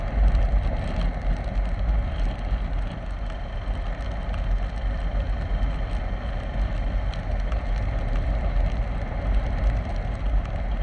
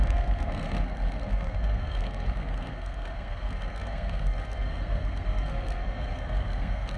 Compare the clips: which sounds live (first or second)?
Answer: first